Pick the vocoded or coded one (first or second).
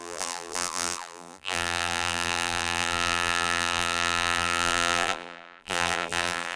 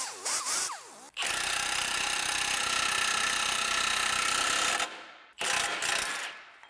first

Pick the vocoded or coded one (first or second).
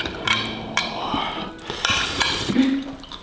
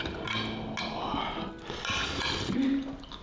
first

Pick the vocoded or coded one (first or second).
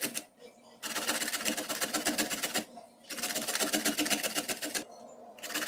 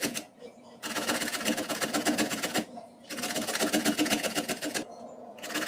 second